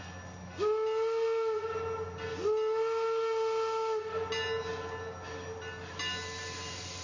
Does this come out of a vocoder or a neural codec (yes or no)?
no